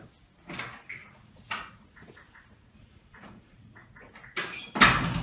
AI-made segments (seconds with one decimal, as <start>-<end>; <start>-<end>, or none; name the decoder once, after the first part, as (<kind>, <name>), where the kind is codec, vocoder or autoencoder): 1.0-4.1 (vocoder, Vocos)